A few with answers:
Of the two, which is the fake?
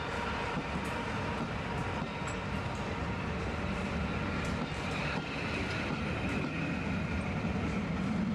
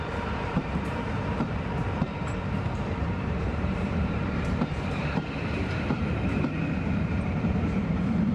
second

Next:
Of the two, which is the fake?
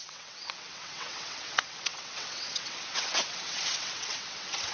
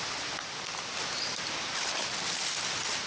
first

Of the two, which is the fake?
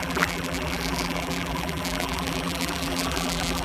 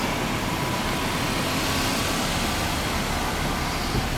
first